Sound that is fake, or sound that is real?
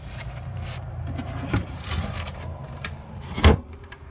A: fake